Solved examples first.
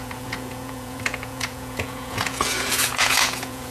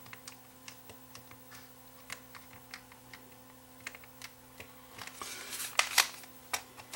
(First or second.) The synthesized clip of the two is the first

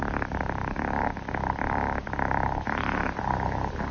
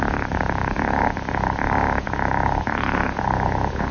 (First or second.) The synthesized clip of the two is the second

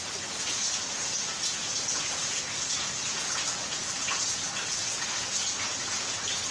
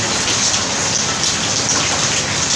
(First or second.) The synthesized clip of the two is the first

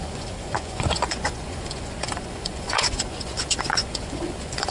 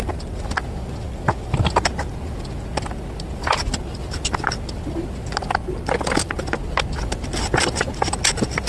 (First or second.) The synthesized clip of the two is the first